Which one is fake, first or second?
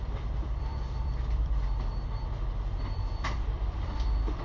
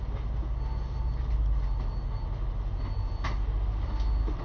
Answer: first